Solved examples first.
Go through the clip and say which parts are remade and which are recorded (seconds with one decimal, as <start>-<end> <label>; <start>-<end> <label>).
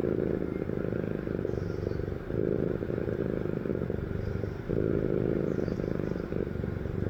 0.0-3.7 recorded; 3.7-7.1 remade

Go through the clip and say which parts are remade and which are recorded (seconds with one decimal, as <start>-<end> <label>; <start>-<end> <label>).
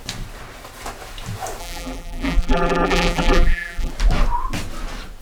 0.0-1.6 recorded; 1.6-3.9 remade; 3.9-5.2 recorded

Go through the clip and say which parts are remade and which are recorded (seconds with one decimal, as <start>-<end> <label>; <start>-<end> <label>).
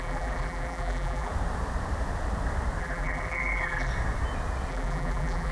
0.0-1.3 remade; 1.3-2.8 recorded; 2.8-3.9 remade; 3.9-4.7 recorded; 4.7-5.5 remade